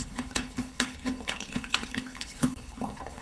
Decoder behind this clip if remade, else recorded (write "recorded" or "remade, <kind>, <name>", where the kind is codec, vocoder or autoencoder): remade, codec, HILCodec